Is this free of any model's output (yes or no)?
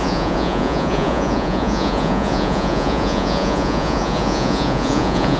no